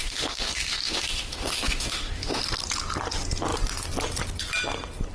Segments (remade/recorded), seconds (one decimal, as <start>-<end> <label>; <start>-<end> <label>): 0.0-2.4 remade; 2.4-5.1 recorded